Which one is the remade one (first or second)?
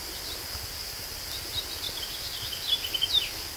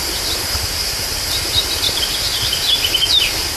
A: second